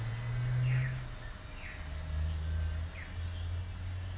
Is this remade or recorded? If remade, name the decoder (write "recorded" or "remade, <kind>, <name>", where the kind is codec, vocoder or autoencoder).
recorded